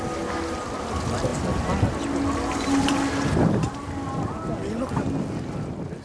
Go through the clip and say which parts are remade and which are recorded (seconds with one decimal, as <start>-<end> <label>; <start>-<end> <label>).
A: 0.0-6.0 recorded